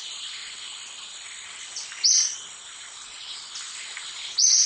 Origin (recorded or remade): remade